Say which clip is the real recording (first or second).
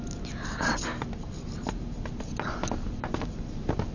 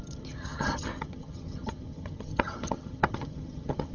first